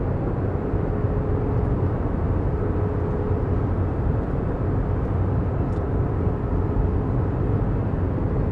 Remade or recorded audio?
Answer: recorded